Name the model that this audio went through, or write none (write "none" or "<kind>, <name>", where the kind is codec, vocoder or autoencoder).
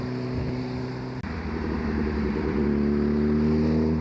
none